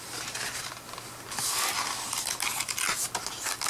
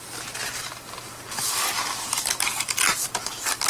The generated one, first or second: second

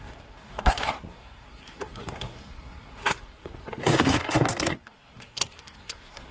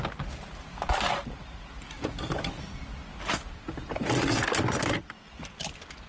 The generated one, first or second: first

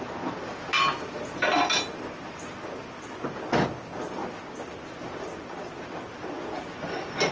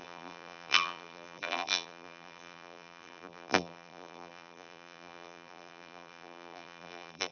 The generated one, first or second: second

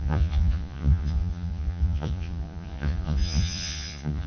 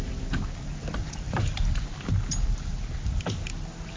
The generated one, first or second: first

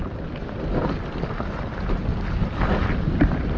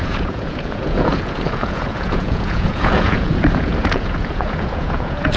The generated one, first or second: second